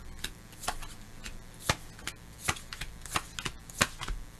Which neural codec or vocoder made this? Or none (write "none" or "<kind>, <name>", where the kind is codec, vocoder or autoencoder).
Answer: none